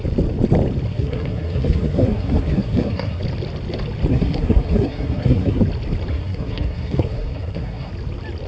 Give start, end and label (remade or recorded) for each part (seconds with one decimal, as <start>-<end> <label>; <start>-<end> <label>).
0.0-0.9 recorded; 0.9-3.2 remade; 3.2-4.1 recorded; 4.1-5.6 remade; 5.6-6.1 recorded; 6.1-7.9 remade; 7.9-8.5 recorded